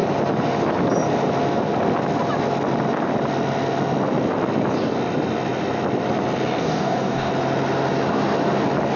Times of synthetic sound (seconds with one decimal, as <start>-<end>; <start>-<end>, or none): 6.6-7.3